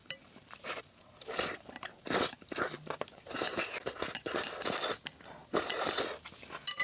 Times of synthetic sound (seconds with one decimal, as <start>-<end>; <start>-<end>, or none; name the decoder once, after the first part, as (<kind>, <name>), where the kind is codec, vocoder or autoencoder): 0.0-3.9 (vocoder, BigVGAN v2); 5.4-5.9